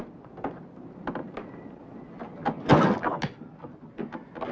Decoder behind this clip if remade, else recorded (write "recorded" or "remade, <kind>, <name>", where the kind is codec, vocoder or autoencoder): recorded